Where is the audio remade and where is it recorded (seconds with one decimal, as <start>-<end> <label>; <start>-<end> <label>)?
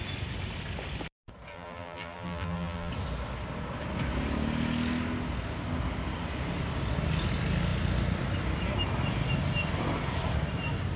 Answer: 0.0-1.5 recorded; 1.5-2.9 remade; 2.9-11.0 recorded